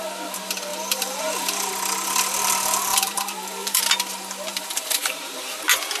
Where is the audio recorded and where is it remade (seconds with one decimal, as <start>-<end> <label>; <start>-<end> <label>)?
0.0-0.7 recorded; 0.7-1.2 remade; 1.2-2.9 recorded; 2.9-3.8 remade; 3.8-4.5 recorded; 4.5-5.2 remade; 5.2-6.0 recorded